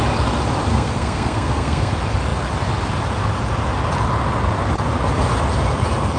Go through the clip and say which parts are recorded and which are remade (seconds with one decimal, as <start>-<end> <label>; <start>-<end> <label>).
0.0-0.7 recorded; 0.7-1.9 remade; 1.9-6.2 recorded